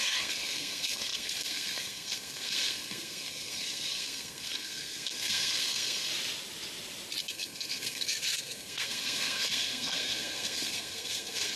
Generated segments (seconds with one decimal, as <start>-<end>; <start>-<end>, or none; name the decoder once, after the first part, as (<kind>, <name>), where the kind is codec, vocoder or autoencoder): 0.0-6.1 (codec, SNAC); 7.2-11.6